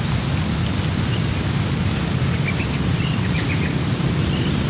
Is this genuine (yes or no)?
yes